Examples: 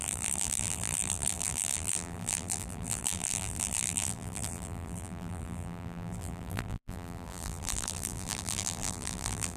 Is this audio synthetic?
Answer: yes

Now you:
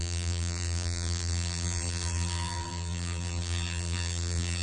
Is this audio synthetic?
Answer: yes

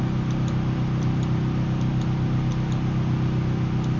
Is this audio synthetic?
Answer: no